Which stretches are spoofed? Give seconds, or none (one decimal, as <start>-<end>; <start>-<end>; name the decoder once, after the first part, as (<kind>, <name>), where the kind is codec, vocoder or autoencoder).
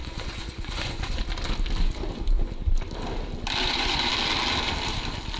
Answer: 0.0-1.2 (vocoder, Vocos); 3.6-4.1